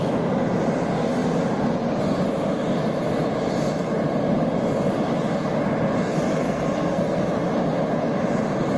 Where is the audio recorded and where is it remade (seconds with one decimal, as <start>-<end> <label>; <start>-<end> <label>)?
0.0-6.3 recorded; 6.3-7.2 remade; 7.2-8.8 recorded